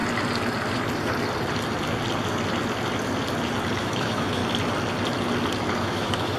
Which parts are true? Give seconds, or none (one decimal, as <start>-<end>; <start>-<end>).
0.0-3.8; 4.4-5.8